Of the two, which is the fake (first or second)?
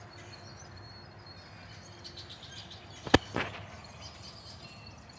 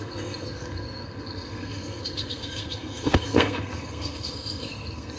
second